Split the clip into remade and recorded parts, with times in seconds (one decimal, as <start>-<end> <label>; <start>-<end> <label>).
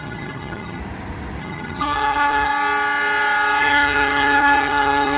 0.0-0.8 remade; 0.8-1.4 recorded; 1.4-2.5 remade; 2.5-3.6 recorded; 3.6-5.2 remade